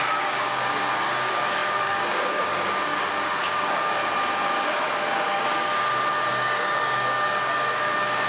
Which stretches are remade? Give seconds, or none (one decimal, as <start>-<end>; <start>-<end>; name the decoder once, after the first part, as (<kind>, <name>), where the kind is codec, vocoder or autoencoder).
0.0-4.0 (codec, DAC); 4.6-5.7; 6.3-8.3